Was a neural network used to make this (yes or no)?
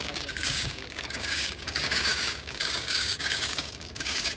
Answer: yes